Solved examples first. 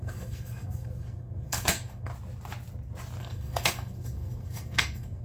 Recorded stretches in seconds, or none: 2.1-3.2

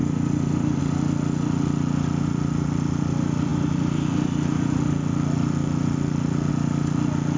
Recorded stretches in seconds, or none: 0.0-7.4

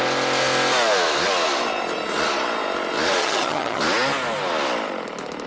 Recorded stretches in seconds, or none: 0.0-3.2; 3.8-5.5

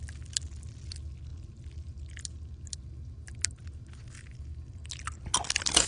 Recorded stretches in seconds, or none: 0.0-5.9

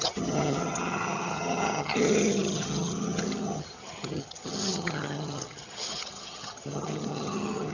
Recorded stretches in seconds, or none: none

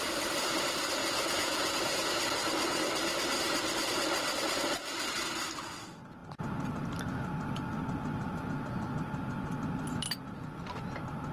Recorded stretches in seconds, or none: 0.0-1.0; 2.1-11.3